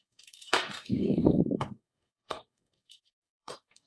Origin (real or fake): fake